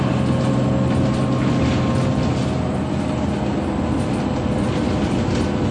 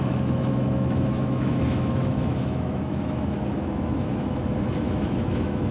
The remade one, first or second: second